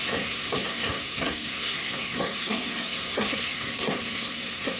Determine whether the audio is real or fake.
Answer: fake